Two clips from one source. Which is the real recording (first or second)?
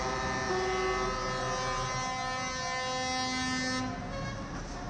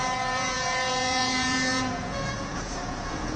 first